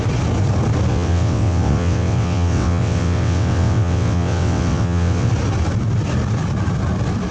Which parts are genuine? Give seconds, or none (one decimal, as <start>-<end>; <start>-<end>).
0.0-0.9; 5.3-7.3